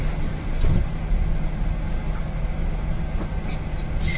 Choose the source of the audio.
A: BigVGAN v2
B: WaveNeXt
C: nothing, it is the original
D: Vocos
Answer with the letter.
C